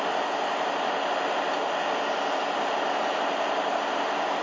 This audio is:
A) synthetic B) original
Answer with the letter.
B